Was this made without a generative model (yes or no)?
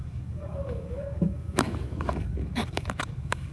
no